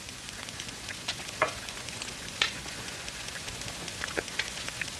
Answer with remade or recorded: remade